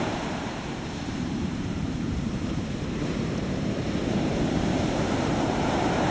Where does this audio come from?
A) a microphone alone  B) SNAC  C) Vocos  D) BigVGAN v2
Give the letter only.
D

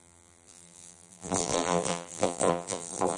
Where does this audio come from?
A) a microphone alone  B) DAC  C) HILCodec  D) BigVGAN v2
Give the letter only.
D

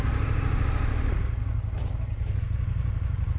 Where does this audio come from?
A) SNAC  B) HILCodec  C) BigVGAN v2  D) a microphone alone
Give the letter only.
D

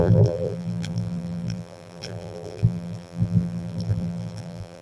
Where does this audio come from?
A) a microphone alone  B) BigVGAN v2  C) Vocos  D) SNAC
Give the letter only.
B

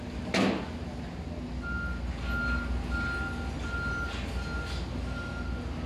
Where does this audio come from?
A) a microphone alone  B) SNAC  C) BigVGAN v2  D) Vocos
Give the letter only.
A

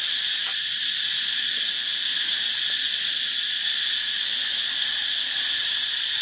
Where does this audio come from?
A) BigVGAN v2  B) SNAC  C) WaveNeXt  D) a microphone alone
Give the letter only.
A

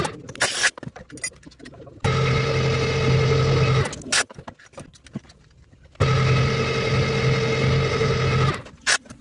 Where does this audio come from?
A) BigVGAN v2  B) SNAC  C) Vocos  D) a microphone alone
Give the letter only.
D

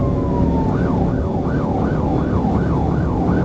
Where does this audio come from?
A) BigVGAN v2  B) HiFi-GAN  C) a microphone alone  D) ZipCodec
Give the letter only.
C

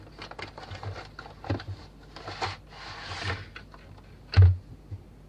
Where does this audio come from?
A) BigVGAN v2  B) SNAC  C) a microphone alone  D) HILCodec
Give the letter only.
C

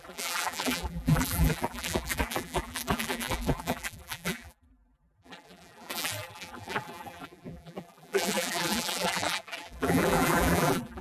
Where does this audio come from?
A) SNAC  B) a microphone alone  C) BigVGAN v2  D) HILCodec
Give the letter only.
C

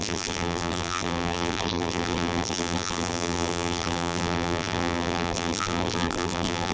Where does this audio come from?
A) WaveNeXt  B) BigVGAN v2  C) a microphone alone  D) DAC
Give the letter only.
B